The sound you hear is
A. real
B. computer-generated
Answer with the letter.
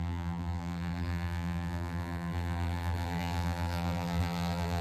B